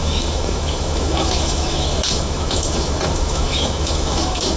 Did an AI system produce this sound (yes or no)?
yes